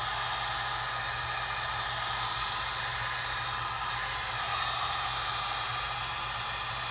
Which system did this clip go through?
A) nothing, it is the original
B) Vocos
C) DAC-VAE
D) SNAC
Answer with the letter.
A